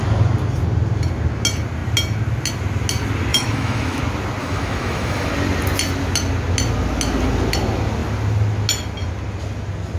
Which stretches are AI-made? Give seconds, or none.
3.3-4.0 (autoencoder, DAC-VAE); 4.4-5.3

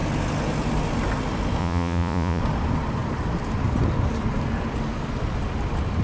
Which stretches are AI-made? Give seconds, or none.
1.6-2.4 (vocoder, Vocos)

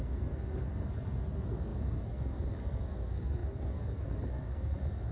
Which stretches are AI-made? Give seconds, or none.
0.0-5.1 (codec, SNAC)

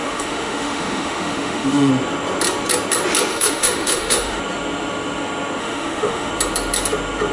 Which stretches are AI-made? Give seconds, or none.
0.0-1.9 (autoencoder, DAC-VAE); 3.3-4.4; 5.6-6.3

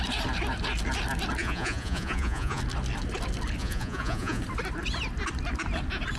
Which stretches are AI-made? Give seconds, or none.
1.4-2.6 (vocoder, Vocos); 3.6-4.4

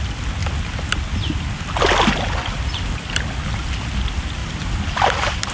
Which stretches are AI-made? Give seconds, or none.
none

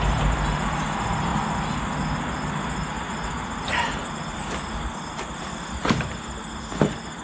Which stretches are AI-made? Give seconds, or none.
none